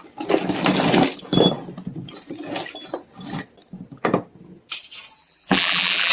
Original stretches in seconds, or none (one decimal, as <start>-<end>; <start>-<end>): 0.0-5.2